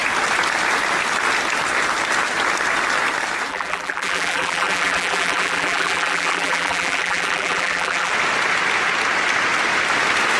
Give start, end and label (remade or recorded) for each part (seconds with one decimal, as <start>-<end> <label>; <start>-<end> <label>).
0.0-3.5 recorded; 3.5-8.1 remade; 8.1-10.4 recorded